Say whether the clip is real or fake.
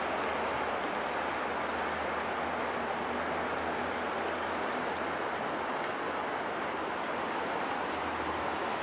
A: real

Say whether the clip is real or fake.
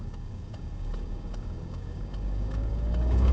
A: fake